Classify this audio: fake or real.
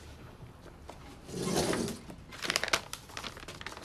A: real